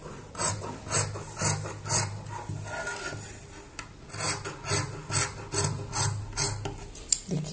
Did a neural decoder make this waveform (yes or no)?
no